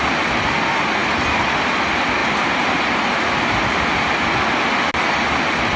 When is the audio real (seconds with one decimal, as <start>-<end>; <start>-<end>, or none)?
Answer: 0.0-2.2; 2.8-5.8